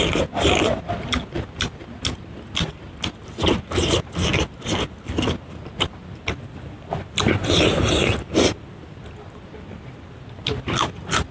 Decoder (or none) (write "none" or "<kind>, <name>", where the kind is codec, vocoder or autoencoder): none